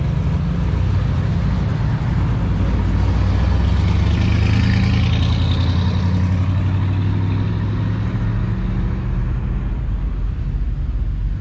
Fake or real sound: real